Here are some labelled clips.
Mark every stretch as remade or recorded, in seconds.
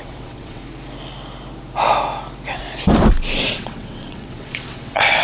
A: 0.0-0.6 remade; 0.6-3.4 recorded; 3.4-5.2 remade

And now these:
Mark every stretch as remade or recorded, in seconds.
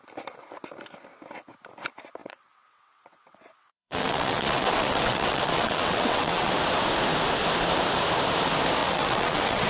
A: 0.0-2.2 recorded; 2.2-6.5 remade; 6.5-8.8 recorded; 8.8-9.7 remade